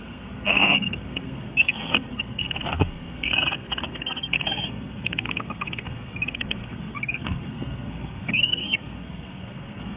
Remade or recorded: remade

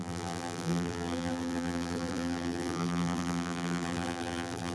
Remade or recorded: remade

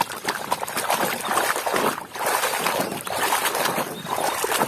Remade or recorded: recorded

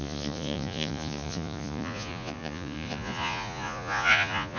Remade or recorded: remade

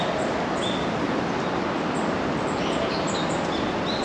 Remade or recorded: recorded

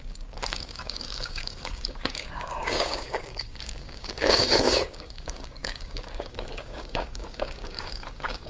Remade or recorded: remade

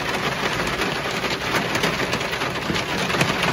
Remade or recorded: recorded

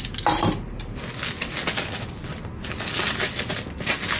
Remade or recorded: recorded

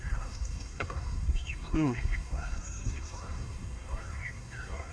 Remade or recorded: remade